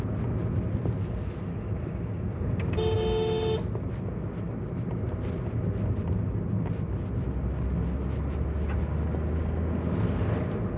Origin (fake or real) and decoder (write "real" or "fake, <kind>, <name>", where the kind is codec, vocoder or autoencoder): real